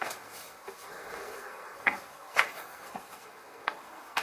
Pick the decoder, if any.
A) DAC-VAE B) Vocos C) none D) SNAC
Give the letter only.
D